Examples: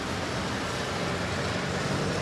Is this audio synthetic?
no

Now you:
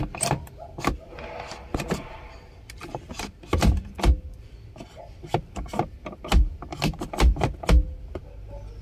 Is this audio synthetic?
no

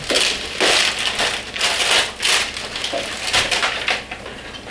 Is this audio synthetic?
no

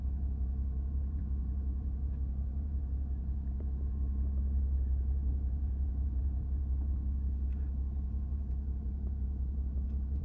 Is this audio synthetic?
yes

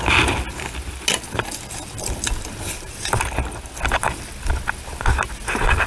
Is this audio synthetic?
no